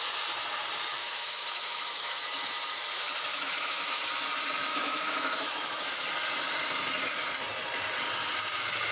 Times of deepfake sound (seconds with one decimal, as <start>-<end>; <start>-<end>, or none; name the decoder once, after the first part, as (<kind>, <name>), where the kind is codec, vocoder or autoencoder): 1.0-2.2 (autoencoder, DAC-VAE); 3.3-4.0; 4.7-5.9